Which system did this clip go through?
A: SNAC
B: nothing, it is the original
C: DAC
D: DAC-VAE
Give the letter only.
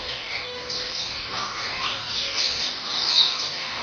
C